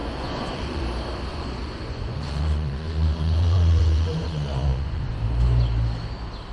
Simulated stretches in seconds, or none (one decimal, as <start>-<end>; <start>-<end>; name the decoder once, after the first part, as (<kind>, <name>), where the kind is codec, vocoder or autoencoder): 0.0-0.8 (vocoder, Vocos); 1.3-5.2